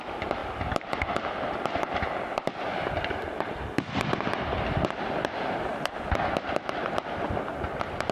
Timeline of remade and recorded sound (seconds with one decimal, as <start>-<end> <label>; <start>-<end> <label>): 0.0-8.1 recorded

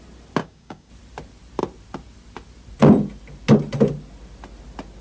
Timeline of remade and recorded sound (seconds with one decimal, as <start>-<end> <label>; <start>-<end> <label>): 0.0-0.4 recorded; 0.4-0.9 remade; 0.9-5.0 recorded

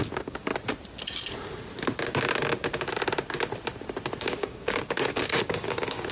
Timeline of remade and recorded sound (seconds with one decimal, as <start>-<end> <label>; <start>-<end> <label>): 0.0-0.5 remade; 0.5-4.2 recorded; 4.2-6.1 remade